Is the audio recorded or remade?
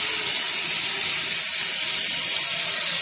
recorded